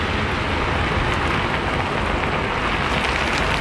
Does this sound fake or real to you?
real